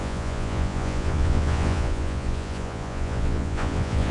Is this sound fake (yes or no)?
yes